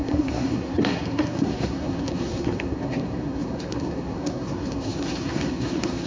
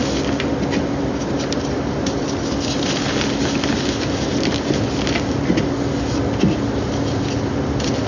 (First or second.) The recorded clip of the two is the second